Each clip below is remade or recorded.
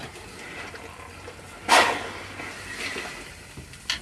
recorded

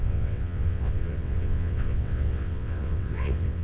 remade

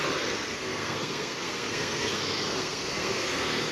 remade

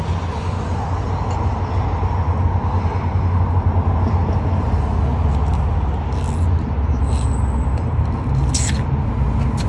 recorded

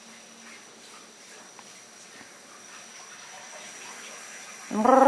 recorded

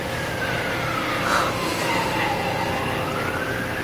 recorded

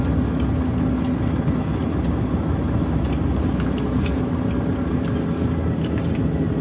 recorded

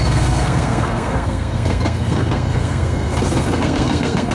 remade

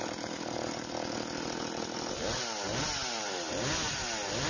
recorded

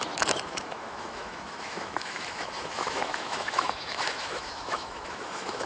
remade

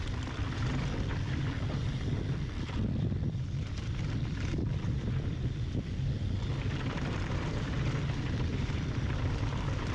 remade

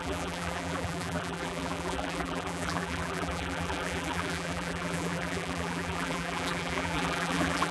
remade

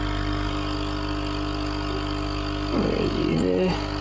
recorded